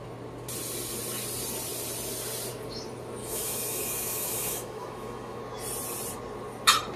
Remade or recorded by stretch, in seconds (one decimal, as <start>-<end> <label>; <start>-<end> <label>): 0.0-3.2 recorded; 3.2-5.4 remade; 5.4-7.0 recorded